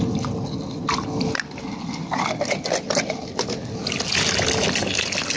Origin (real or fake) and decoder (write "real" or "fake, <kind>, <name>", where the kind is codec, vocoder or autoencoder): real